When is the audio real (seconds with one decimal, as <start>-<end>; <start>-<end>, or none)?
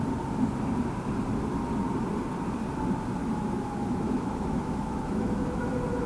0.0-3.2